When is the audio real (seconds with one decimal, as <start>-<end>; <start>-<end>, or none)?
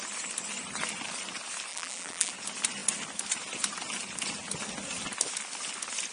0.0-1.7; 2.3-6.1